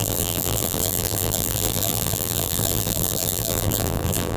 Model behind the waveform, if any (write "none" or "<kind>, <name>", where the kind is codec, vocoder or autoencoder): vocoder, BigVGAN v2